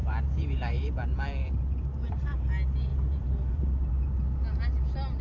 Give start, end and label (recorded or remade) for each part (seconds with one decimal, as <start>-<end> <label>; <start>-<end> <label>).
0.0-2.5 remade; 2.5-2.9 recorded; 2.9-3.9 remade; 3.9-5.2 recorded